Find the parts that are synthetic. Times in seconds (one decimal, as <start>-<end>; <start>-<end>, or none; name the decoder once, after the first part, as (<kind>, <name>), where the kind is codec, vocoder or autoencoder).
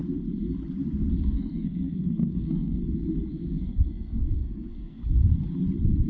1.2-2.8 (codec, SNAC); 3.3-5.0